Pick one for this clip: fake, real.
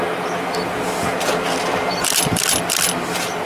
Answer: real